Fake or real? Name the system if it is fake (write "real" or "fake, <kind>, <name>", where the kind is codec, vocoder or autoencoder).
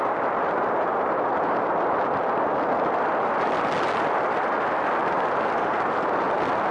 real